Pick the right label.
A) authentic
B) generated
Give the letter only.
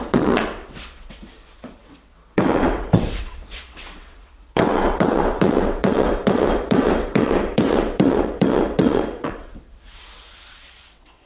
B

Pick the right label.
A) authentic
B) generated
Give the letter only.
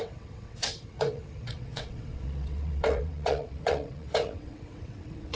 B